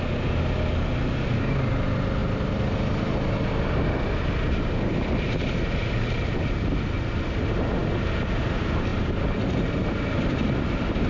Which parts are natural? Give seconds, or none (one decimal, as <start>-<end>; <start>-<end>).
0.0-2.2; 4.9-7.8; 8.4-11.1